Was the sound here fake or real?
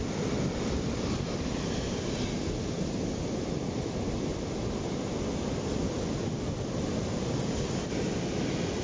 real